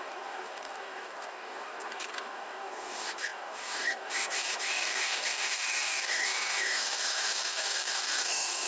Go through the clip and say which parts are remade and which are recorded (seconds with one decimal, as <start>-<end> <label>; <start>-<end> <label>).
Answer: 0.0-8.7 remade